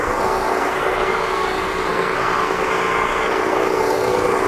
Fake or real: fake